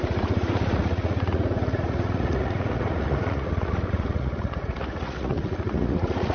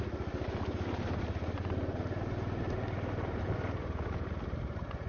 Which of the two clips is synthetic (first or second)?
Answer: first